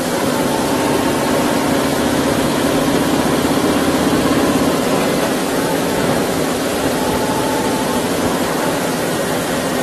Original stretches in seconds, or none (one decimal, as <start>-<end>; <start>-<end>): 0.0-1.9; 2.7-5.4; 6.7-9.8